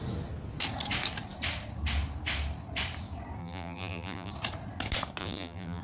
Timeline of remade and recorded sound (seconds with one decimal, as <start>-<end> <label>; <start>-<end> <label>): 0.0-3.4 recorded; 3.4-4.3 remade; 4.3-5.2 recorded; 5.2-5.8 remade